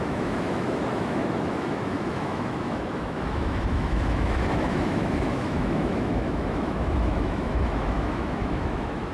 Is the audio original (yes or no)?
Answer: no